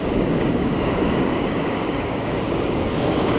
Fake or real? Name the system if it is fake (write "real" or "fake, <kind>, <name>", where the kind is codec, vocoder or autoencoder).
fake, codec, DAC